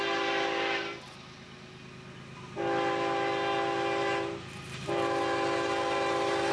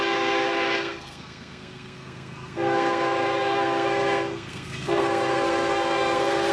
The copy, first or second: second